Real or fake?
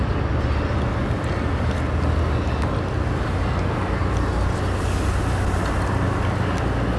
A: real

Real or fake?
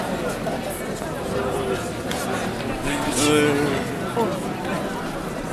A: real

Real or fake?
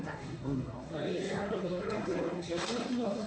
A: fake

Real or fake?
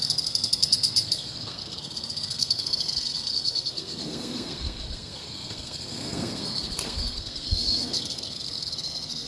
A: fake